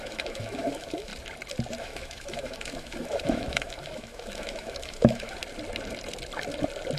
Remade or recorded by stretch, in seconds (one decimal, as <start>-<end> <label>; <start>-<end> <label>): 0.0-1.1 remade; 1.1-1.8 recorded; 1.8-5.4 remade; 5.4-7.0 recorded

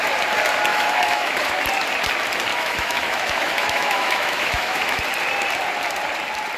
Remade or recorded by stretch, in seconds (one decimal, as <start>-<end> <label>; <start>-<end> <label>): 0.0-0.7 recorded; 0.7-1.6 remade; 1.6-2.5 recorded; 2.5-5.0 remade; 5.0-6.6 recorded

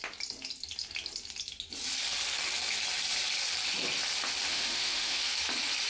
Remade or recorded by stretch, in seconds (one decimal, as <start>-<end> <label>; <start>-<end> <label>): 0.0-4.5 recorded; 4.5-5.2 remade; 5.2-5.9 recorded